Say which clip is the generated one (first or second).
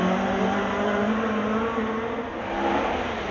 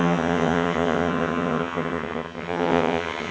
second